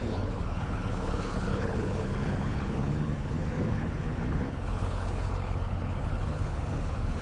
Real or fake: fake